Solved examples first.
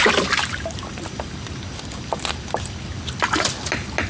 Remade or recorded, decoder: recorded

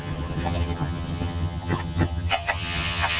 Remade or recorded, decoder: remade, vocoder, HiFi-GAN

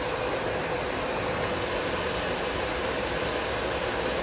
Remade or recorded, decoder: recorded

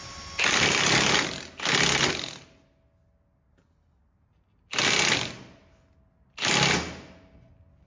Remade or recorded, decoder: recorded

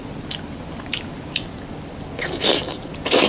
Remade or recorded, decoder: recorded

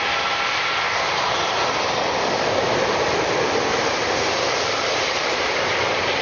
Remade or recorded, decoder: recorded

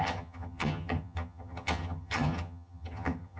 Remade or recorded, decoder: remade, vocoder, HiFi-GAN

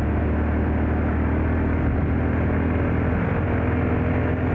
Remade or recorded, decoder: recorded